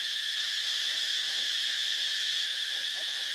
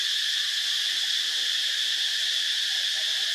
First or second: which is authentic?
second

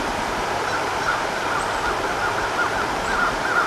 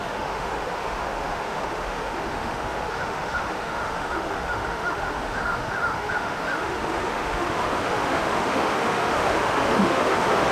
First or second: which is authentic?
first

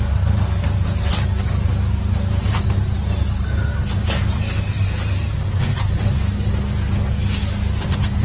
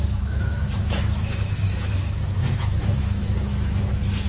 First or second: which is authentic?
first